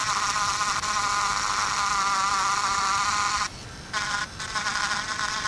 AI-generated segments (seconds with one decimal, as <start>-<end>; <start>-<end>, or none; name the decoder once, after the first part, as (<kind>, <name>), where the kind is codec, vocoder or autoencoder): none